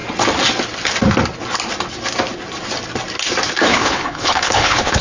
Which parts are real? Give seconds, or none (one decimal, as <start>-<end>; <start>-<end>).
0.0-3.7